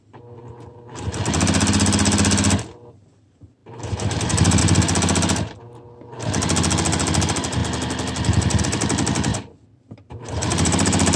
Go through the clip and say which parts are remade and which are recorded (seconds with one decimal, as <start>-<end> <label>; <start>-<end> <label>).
0.0-3.6 recorded; 3.6-4.6 remade; 4.6-9.3 recorded; 9.3-11.2 remade